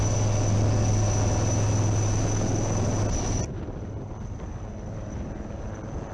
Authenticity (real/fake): real